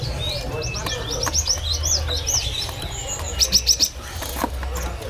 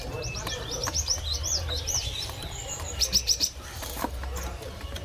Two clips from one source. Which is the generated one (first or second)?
second